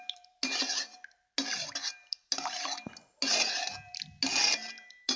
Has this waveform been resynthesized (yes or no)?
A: no